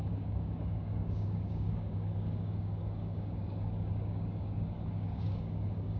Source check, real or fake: fake